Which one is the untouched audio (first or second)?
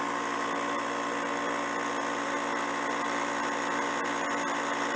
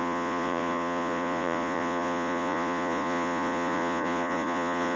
first